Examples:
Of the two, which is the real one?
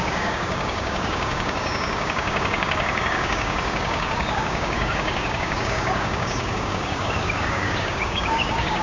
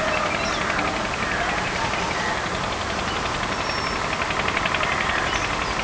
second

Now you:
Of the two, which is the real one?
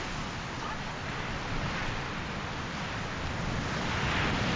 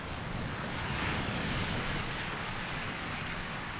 first